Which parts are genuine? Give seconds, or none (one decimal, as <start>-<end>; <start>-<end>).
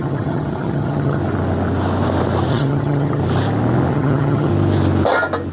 1.2-2.5; 3.2-3.9; 4.5-5.5